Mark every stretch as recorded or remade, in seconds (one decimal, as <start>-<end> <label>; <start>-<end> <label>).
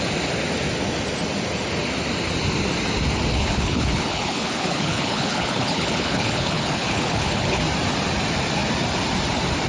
0.0-3.3 recorded; 3.3-7.6 remade; 7.6-9.7 recorded